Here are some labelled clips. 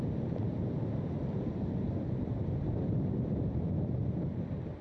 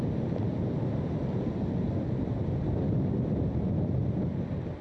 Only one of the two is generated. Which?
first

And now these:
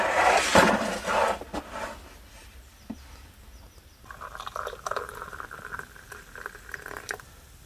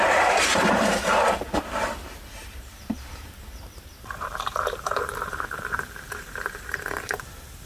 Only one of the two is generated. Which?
second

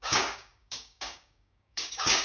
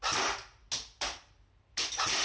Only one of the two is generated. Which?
first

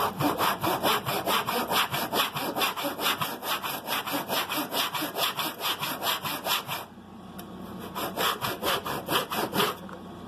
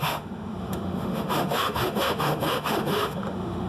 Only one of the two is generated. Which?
second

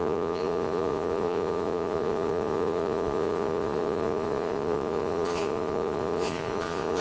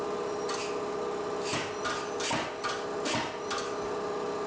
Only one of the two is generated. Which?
first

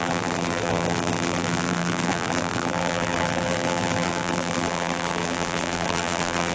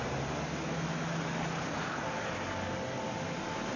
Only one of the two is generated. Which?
first